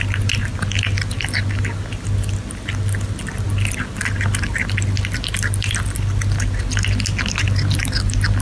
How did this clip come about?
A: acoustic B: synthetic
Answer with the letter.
A